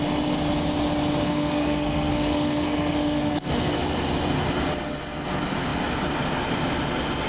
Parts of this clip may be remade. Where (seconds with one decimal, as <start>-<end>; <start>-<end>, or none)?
1.2-3.8